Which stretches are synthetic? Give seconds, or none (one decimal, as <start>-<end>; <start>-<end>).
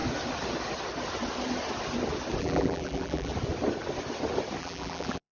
2.4-3.3; 4.6-5.4